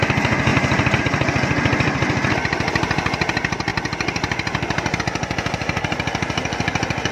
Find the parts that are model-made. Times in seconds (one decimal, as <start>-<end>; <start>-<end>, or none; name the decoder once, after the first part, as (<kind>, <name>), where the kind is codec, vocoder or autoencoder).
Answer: none